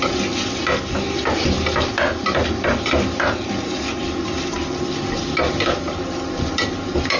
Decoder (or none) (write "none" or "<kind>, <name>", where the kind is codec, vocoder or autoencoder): none